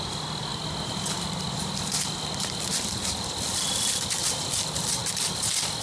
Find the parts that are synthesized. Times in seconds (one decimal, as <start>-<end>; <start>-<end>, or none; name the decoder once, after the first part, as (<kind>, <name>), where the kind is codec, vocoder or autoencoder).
none